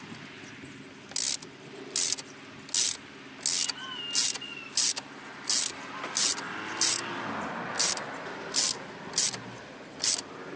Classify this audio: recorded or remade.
recorded